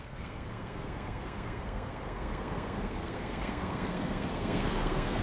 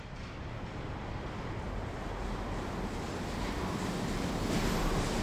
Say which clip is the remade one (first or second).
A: first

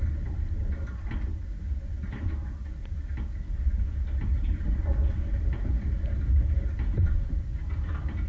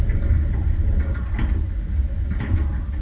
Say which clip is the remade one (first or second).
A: first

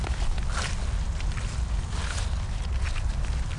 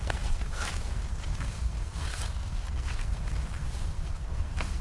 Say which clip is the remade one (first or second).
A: second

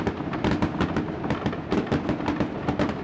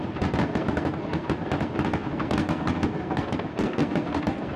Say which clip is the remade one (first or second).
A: second